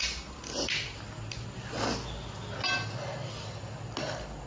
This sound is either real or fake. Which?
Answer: real